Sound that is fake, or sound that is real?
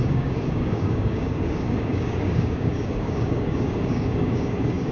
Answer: fake